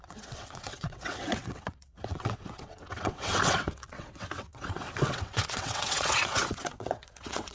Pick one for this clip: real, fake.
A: fake